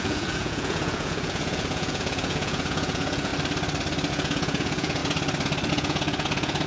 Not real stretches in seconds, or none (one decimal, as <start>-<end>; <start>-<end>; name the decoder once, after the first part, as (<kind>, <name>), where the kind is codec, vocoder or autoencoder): 0.0-3.3 (vocoder, Vocos); 4.1-5.0; 5.7-6.7